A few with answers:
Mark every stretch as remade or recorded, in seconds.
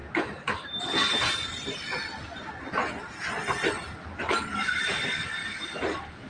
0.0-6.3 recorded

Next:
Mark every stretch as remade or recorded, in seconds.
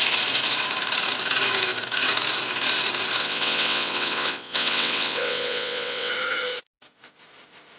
0.0-3.2 recorded; 3.2-6.1 remade; 6.1-7.8 recorded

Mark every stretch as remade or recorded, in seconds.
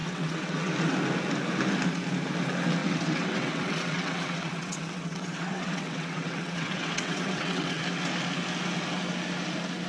0.0-0.7 remade; 0.7-2.8 recorded; 2.8-7.8 remade; 7.8-9.9 recorded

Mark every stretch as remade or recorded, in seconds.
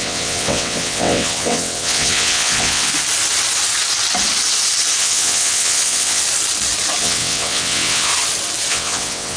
0.0-2.9 remade; 2.9-5.0 recorded; 5.0-6.2 remade; 6.2-7.0 recorded; 7.0-8.1 remade; 8.1-8.7 recorded; 8.7-9.4 remade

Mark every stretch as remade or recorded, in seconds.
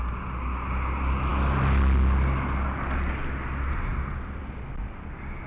0.0-5.5 recorded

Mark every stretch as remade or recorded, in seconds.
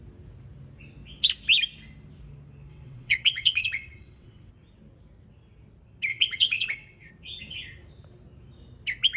0.0-2.7 recorded; 2.7-4.5 remade; 4.5-6.1 recorded; 6.1-7.1 remade; 7.1-9.2 recorded